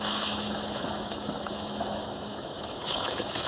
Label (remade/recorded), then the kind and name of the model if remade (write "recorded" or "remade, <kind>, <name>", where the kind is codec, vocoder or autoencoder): remade, autoencoder, DAC-VAE